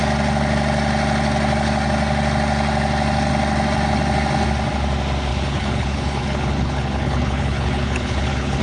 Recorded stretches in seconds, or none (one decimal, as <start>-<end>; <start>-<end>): 0.0-5.3